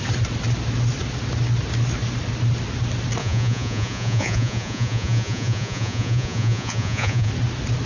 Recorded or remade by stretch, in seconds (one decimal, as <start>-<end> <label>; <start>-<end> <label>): 0.0-3.2 recorded; 3.2-7.3 remade; 7.3-7.9 recorded